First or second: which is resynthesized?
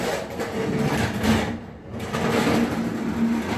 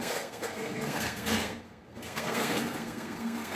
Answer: second